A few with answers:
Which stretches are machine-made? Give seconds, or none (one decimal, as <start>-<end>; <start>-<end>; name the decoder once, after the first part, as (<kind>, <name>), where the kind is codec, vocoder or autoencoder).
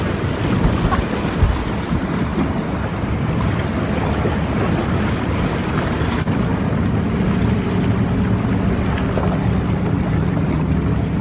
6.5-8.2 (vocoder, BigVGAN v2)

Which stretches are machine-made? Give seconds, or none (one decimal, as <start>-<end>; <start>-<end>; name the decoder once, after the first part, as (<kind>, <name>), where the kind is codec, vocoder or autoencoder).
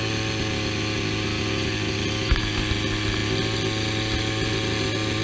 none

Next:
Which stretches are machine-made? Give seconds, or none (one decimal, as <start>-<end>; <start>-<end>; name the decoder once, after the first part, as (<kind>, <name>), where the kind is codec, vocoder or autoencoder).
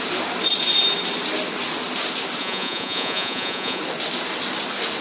2.4-3.8 (vocoder, Vocos)